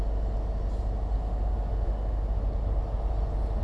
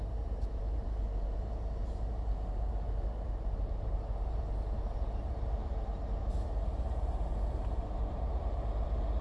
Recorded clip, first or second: first